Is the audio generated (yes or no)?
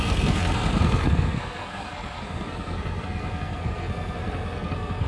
yes